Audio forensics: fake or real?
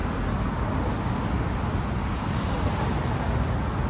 real